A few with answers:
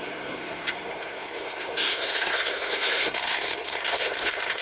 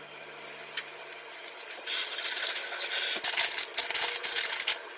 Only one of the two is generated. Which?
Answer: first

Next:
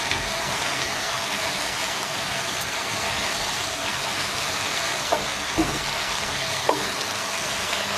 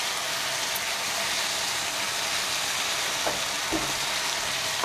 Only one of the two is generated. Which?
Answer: first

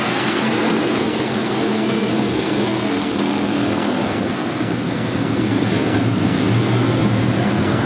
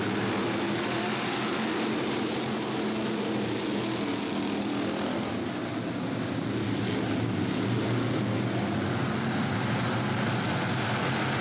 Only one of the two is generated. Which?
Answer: first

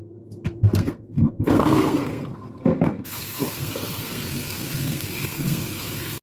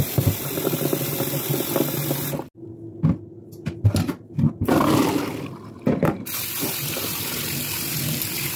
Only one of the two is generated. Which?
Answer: first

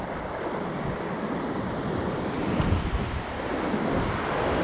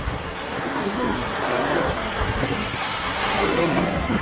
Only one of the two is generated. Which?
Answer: second